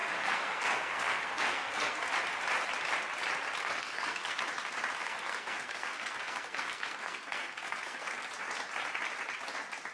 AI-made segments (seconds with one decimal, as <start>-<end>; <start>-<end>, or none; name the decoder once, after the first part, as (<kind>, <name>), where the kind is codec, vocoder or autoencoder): 0.0-2.1 (codec, SNAC); 3.6-4.4; 5.0-8.3